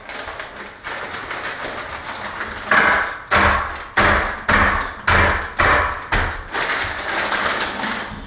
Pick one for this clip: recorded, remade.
recorded